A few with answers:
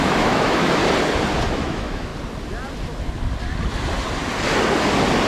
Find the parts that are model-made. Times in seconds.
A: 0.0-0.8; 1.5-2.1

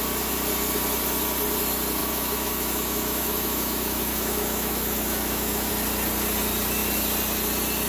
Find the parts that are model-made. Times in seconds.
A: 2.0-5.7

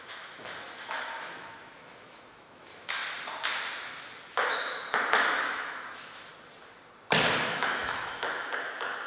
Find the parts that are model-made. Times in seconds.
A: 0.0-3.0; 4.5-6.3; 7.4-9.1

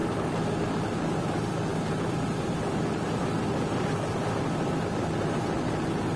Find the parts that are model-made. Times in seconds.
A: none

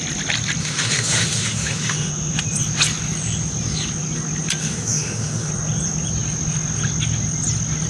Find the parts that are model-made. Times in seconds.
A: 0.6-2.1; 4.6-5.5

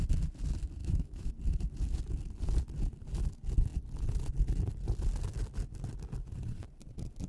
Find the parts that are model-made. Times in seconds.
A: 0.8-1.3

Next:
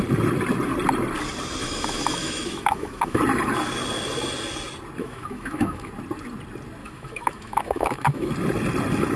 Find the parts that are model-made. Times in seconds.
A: 1.6-3.2; 5.0-5.9; 6.8-8.3